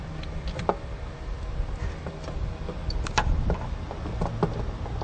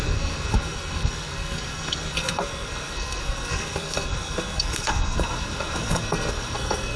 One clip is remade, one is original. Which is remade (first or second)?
second